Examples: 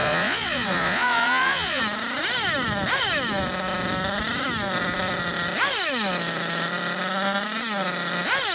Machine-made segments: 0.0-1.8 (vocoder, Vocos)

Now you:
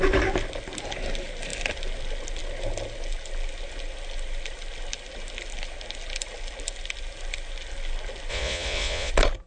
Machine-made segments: 8.3-9.1 (vocoder, Vocos)